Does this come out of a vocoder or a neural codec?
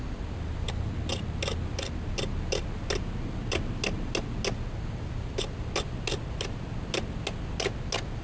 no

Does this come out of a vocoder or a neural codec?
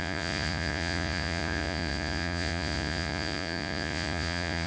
yes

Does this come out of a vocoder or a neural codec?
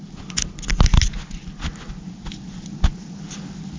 no